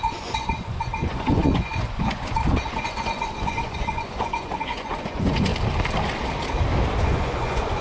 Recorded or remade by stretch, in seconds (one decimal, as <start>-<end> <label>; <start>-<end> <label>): 0.0-5.5 remade; 5.5-7.0 recorded; 7.0-7.8 remade